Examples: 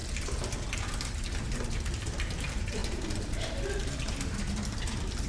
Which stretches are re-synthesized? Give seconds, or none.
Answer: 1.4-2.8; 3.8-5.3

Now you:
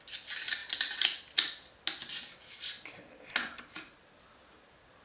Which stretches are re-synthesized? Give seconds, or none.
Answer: none

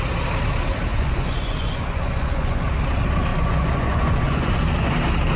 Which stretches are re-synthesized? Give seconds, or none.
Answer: 0.9-2.7; 3.3-4.5

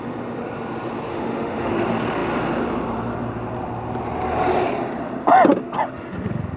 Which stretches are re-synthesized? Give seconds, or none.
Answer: 1.1-1.7

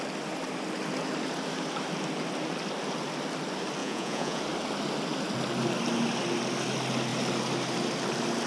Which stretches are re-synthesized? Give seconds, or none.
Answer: 3.8-4.4

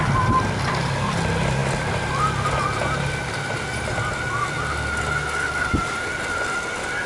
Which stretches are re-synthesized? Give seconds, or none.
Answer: none

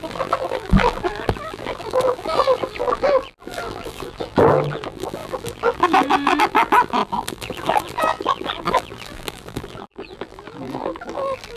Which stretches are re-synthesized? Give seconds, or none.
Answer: 0.0-11.6